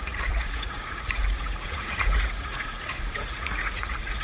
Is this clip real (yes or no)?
no